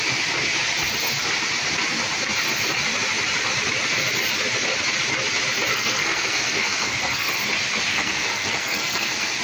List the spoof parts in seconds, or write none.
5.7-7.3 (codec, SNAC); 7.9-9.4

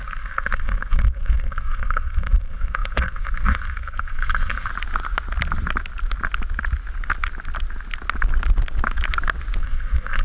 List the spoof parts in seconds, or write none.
0.0-4.7 (codec, SNAC); 9.6-10.2

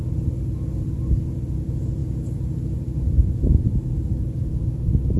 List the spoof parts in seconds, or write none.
none

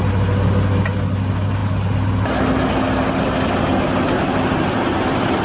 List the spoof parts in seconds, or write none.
none

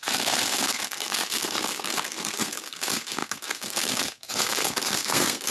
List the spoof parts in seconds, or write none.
0.0-5.5 (codec, SNAC)